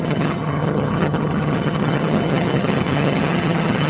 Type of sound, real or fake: fake